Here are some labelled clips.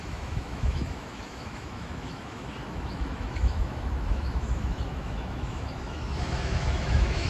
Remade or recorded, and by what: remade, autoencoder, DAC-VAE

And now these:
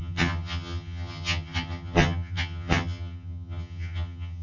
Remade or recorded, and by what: remade, vocoder, HiFi-GAN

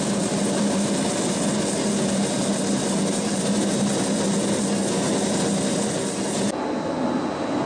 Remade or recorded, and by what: recorded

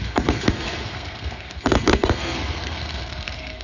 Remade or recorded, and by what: remade, codec, SNAC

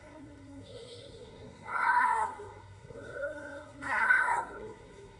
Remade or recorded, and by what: remade, codec, SNAC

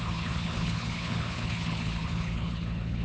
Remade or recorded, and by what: remade, codec, HILCodec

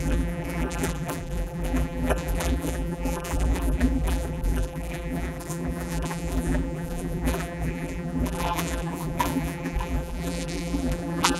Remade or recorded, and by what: remade, vocoder, BigVGAN v2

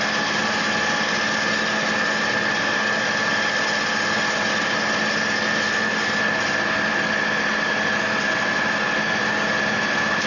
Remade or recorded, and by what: recorded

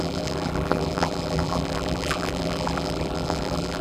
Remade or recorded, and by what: remade, vocoder, BigVGAN v2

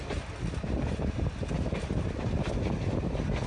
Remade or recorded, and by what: recorded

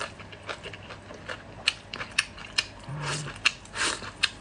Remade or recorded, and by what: remade, vocoder, BigVGAN v2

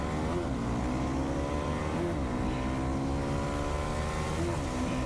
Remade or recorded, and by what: recorded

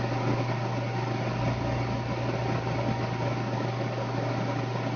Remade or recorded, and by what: recorded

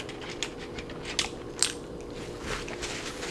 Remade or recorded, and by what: recorded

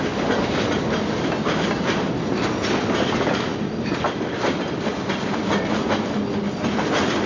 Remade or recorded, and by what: recorded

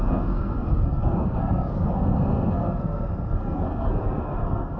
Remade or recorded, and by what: remade, codec, SNAC